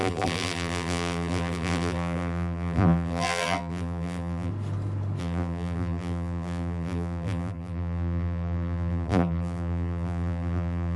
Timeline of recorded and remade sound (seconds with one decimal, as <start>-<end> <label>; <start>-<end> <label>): 0.0-4.5 remade; 4.5-5.2 recorded; 5.2-11.0 remade